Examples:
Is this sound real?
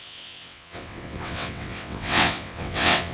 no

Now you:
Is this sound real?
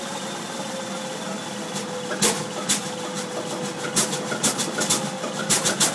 yes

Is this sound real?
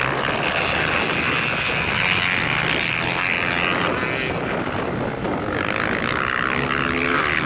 yes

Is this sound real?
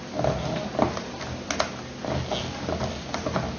yes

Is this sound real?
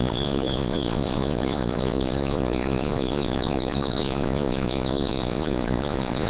no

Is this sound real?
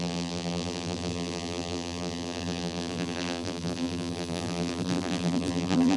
no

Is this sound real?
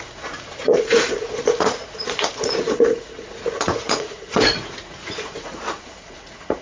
no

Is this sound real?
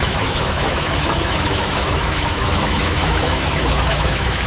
no